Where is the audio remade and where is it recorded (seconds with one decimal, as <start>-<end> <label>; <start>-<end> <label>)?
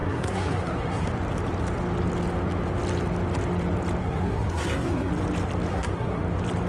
0.0-1.1 remade; 1.1-4.0 recorded; 4.0-5.1 remade; 5.1-5.7 recorded; 5.7-6.2 remade; 6.2-6.7 recorded